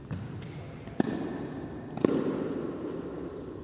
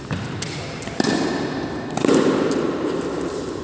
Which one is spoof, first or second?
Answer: second